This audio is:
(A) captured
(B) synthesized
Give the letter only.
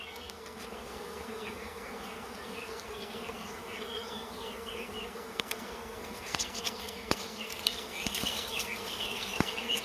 B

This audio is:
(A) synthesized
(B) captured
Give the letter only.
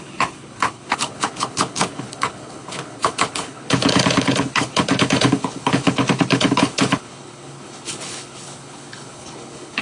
A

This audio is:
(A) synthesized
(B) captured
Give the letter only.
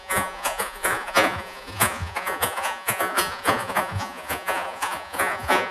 A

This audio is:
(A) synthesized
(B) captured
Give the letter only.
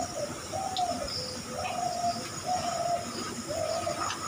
B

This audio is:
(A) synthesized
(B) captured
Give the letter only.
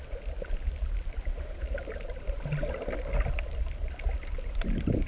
B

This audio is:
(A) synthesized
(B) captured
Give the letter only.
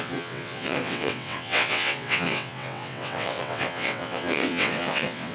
A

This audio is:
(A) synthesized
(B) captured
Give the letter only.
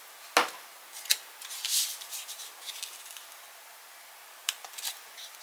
B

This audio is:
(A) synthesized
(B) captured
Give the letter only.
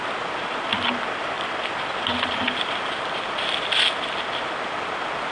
B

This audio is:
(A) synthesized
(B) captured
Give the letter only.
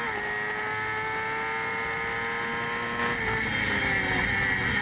B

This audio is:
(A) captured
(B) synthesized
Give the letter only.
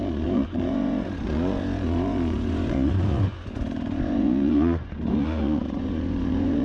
B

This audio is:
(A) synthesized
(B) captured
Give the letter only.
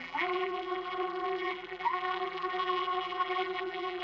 A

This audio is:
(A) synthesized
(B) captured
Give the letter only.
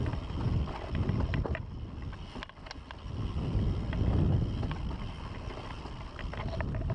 B